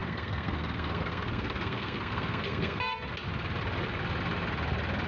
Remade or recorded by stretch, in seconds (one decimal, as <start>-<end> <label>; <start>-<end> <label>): 0.0-3.1 remade; 3.1-5.1 recorded